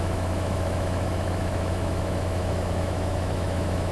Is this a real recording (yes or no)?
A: no